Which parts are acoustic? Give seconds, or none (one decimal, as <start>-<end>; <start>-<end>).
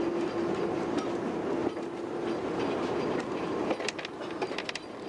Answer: 0.0-5.1